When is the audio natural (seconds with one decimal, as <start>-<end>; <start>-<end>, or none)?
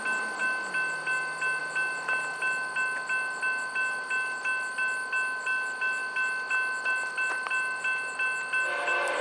0.0-9.2